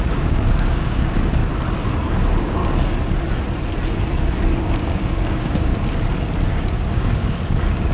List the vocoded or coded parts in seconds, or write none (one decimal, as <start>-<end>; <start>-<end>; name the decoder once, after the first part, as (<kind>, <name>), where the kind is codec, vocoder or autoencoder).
0.0-1.4 (codec, DAC); 2.1-2.6; 4.6-5.7; 6.5-7.9

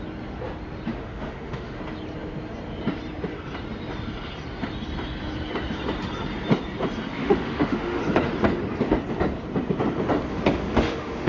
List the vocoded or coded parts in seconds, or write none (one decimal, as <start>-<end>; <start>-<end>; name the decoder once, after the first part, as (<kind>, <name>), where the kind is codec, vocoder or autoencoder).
0.9-1.8 (autoencoder, DAC-VAE); 7.2-8.0; 10.3-11.3

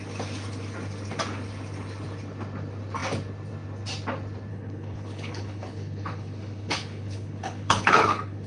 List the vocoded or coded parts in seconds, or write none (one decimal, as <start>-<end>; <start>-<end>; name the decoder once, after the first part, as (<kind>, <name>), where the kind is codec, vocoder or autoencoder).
4.5-8.5 (codec, HILCodec)

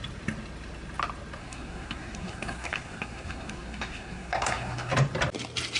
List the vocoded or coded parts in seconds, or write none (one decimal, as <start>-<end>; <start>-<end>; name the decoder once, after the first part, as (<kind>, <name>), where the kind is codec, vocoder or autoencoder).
1.4-4.9 (codec, SNAC)

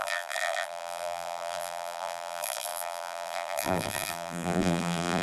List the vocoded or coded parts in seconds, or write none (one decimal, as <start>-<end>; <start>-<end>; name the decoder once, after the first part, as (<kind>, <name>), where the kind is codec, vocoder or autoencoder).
0.0-5.2 (vocoder, BigVGAN v2)

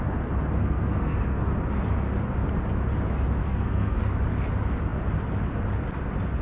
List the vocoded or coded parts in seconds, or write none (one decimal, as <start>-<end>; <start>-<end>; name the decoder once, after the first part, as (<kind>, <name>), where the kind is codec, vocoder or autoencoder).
0.6-1.4 (codec, SNAC); 3.4-4.0